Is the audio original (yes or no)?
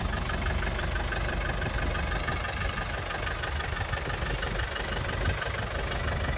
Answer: yes